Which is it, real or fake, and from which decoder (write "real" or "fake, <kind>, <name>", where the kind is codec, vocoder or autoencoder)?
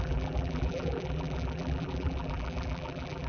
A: fake, vocoder, BigVGAN v2